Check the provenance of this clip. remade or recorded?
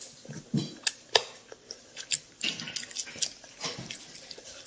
recorded